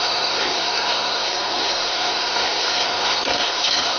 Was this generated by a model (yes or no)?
yes